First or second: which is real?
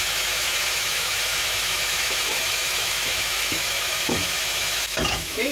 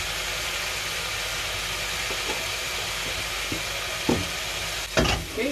second